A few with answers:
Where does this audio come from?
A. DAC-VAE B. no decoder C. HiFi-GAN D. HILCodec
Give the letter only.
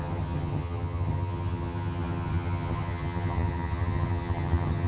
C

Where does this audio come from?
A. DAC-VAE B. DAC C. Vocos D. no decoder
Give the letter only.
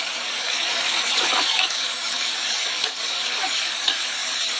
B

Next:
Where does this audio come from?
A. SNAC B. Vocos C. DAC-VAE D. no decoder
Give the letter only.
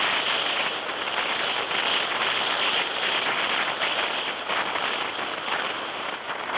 D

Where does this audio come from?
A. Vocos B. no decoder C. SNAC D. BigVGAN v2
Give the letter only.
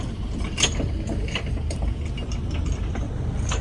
B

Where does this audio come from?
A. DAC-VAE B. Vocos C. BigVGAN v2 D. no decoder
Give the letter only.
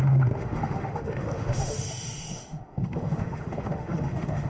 A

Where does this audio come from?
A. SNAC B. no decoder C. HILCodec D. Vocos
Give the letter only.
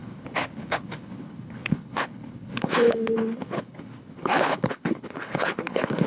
C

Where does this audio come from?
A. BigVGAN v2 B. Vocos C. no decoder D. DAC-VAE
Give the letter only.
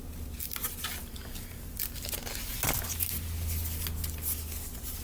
C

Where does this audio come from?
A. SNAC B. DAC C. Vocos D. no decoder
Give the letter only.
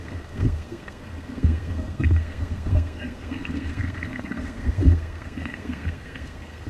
A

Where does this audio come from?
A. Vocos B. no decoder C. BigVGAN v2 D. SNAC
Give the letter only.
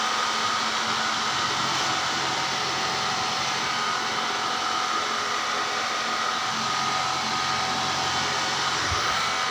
B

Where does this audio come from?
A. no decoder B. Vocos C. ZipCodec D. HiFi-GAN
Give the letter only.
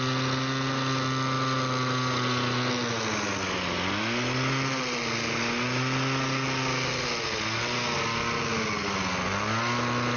A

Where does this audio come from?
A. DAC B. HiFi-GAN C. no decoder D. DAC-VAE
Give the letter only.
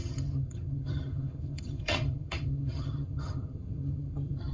B